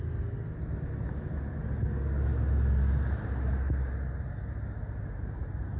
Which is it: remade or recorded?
recorded